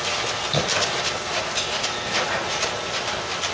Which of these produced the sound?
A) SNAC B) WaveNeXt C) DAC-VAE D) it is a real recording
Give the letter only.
D